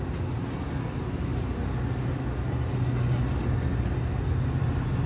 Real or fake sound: real